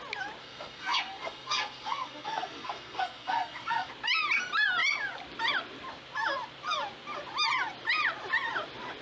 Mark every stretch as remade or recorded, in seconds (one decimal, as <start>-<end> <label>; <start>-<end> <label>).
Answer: 0.0-0.4 recorded; 0.4-3.9 remade; 3.9-9.0 recorded